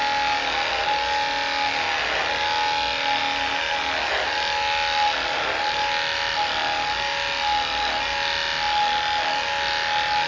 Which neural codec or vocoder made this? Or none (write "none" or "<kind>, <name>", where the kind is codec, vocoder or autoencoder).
none